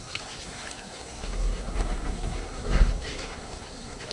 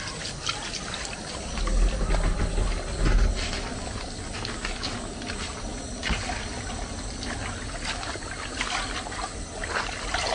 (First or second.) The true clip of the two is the second